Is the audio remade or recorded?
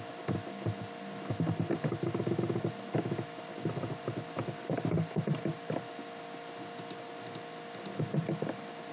recorded